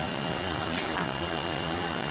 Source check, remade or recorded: remade